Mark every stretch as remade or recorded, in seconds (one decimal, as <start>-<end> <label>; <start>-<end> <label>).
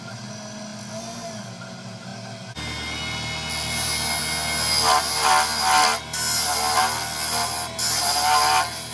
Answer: 0.0-8.9 recorded